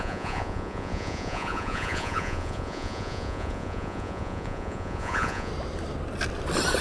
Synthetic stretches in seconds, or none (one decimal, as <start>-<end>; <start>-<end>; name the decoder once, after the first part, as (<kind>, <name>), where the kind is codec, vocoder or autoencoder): 0.0-5.5 (vocoder, Vocos)